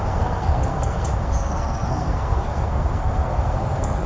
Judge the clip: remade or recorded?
remade